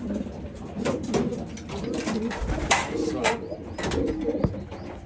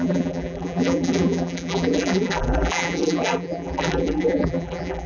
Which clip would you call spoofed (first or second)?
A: second